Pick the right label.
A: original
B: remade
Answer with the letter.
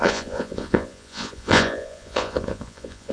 B